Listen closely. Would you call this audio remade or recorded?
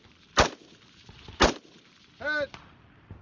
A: recorded